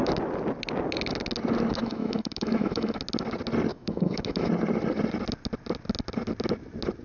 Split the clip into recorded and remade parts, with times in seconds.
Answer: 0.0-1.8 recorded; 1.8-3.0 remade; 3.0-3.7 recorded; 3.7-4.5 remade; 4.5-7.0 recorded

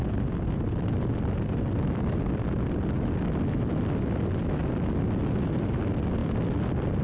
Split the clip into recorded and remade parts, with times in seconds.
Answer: 0.0-2.2 remade; 2.2-4.4 recorded; 4.4-5.0 remade; 5.0-7.0 recorded

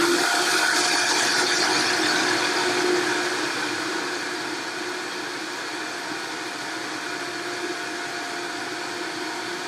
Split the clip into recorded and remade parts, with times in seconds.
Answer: 0.0-3.1 recorded; 3.1-4.8 remade; 4.8-9.7 recorded

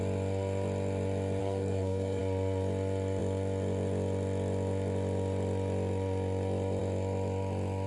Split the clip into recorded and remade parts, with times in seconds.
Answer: 0.0-1.4 recorded; 1.4-2.2 remade; 2.2-7.9 recorded

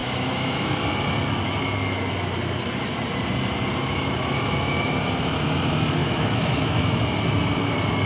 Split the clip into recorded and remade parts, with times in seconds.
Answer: 0.0-0.8 remade; 0.8-3.8 recorded; 3.8-4.9 remade; 4.9-6.0 recorded; 6.0-6.9 remade; 6.9-8.1 recorded

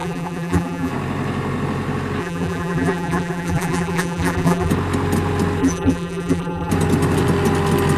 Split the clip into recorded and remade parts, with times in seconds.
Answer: 0.0-0.9 remade; 0.9-2.2 recorded; 2.2-4.7 remade; 4.7-5.6 recorded; 5.6-6.7 remade; 6.7-8.0 recorded

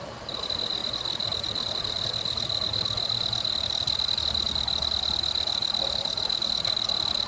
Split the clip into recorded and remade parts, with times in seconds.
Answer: 0.0-7.3 recorded

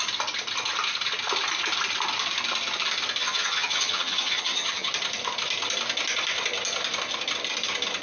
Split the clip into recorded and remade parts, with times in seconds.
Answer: 0.0-3.2 recorded; 3.2-4.9 remade; 4.9-8.0 recorded